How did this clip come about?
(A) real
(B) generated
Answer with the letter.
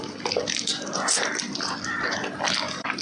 A